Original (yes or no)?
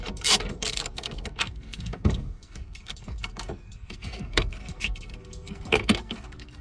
no